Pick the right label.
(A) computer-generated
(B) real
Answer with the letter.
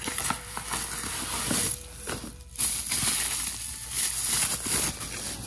B